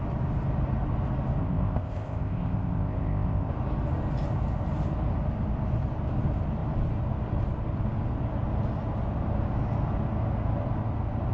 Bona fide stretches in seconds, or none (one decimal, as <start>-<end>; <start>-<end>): 0.0-1.4; 3.5-11.3